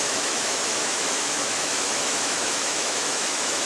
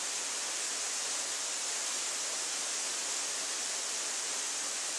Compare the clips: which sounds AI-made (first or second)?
first